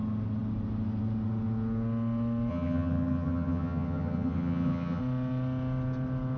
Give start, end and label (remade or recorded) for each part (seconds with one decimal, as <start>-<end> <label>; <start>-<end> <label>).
0.0-2.5 recorded; 2.5-5.0 remade; 5.0-6.4 recorded